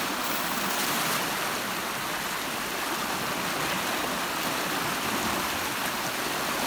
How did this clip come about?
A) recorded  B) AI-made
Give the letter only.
A